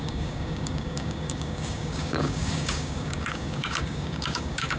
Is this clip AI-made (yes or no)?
yes